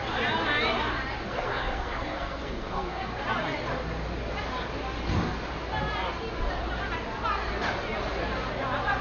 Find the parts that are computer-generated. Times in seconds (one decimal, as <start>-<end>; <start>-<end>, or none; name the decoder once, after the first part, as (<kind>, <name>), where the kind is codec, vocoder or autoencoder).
1.2-3.2 (codec, SNAC)